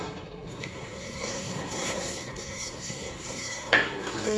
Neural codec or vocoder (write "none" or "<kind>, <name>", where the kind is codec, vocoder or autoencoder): codec, SNAC